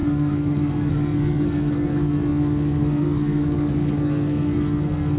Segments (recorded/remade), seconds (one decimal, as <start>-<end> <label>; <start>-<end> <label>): 0.0-5.2 remade